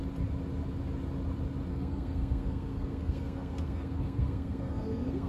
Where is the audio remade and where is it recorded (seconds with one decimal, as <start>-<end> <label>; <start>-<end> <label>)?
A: 0.0-1.7 recorded; 1.7-5.3 remade